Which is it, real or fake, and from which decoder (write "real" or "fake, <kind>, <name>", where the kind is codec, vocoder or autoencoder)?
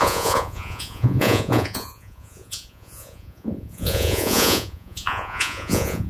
fake, vocoder, Vocos